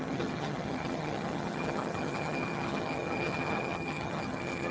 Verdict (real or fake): fake